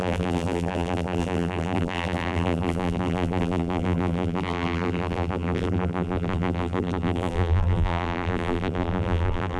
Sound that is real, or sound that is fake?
fake